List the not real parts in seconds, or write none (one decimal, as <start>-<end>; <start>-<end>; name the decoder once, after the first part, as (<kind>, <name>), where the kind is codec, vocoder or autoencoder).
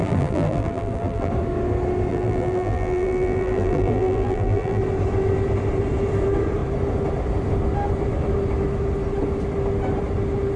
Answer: 0.0-1.3 (vocoder, BigVGAN v2); 2.1-4.8